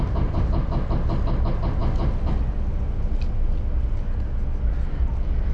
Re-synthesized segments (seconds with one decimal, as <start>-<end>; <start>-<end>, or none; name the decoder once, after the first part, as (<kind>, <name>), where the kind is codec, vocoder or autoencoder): none